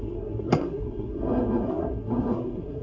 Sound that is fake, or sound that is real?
fake